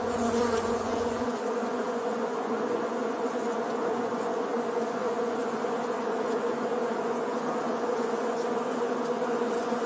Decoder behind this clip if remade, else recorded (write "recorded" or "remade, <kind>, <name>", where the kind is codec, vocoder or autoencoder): remade, vocoder, Vocos